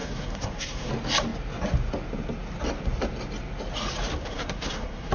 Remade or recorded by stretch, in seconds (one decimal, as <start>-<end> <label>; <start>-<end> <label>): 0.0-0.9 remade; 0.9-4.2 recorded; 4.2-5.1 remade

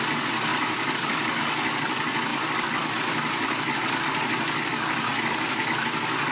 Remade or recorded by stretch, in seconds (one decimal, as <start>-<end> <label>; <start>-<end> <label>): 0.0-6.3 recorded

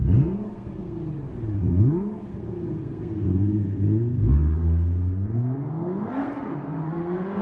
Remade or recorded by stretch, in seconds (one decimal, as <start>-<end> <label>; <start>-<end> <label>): 0.0-1.0 remade; 1.0-1.6 recorded; 1.6-7.4 remade